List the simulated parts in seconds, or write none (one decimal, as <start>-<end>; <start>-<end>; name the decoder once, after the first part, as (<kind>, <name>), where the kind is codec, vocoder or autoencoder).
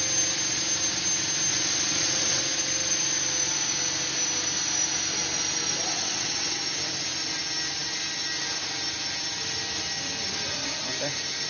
1.5-2.4 (vocoder, WaveNeXt); 5.9-6.6